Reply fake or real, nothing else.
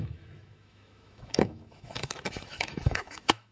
fake